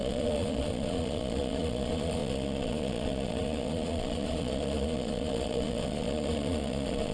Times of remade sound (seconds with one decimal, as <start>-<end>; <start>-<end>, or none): 0.0-7.1